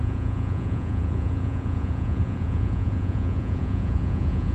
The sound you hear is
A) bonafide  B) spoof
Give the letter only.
B